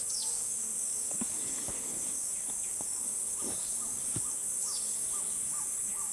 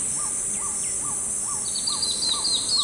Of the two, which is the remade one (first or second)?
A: first